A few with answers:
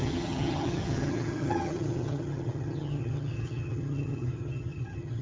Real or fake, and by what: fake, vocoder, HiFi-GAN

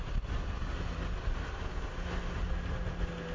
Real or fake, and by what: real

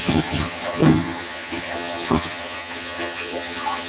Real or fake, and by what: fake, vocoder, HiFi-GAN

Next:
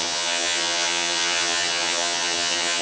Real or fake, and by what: fake, vocoder, HiFi-GAN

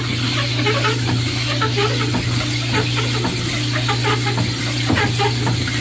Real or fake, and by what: real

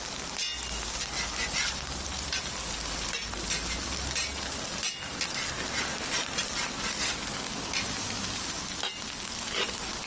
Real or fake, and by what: real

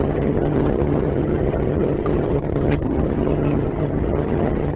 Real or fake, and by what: fake, vocoder, HiFi-GAN